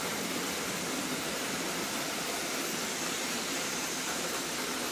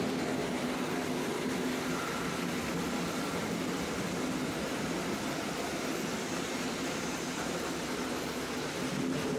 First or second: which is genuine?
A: second